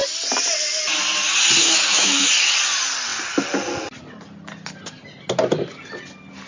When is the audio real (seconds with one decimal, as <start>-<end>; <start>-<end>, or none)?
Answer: 0.0-1.6; 2.3-6.5